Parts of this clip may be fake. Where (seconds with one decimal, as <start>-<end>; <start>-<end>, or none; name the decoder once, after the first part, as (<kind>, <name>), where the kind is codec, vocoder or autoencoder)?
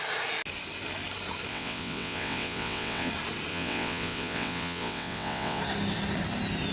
1.5-3.1 (vocoder, WaveNeXt); 3.5-5.6